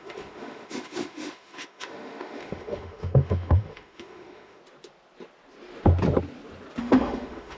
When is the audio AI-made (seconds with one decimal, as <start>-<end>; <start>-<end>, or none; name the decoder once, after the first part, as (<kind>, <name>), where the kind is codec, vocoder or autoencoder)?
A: 0.0-4.6 (autoencoder, DAC-VAE); 6.8-7.6